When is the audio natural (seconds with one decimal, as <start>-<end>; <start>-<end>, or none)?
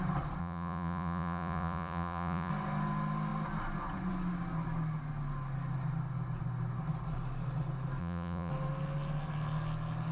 0.0-0.4; 2.5-8.0; 8.5-10.1